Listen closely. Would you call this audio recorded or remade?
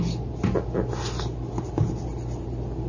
recorded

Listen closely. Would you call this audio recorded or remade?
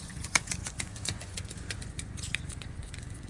remade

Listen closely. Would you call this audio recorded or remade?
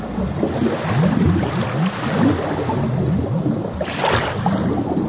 recorded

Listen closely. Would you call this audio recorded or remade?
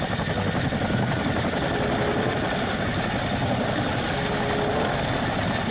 recorded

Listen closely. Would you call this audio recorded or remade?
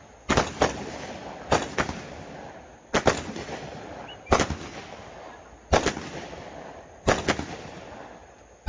recorded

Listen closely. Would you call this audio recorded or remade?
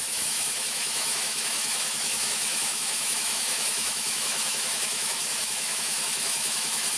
remade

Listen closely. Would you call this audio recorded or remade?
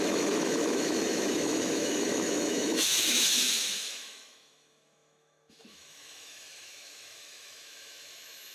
remade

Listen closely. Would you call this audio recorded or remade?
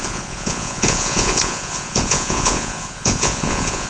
remade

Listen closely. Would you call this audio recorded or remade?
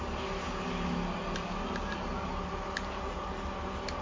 recorded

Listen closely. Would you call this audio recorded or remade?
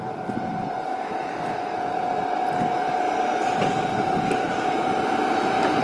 recorded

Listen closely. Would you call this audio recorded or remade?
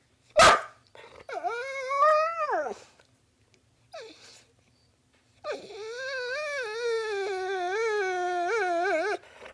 recorded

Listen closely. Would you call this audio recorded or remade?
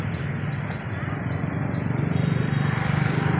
recorded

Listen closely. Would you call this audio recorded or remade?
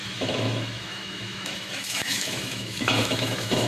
remade